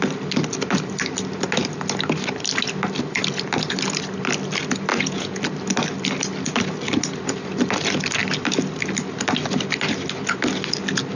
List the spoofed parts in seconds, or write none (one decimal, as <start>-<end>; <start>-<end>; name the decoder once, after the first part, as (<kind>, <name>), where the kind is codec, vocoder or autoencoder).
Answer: 4.9-5.4 (vocoder, Vocos)